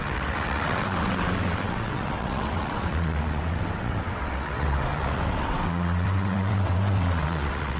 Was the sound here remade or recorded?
remade